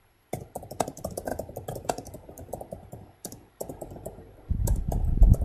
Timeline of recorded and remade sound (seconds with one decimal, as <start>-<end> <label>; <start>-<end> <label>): 0.0-5.4 remade